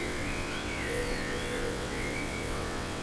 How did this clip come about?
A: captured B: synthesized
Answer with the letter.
B